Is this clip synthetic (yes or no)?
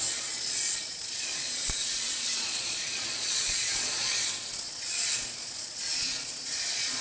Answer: yes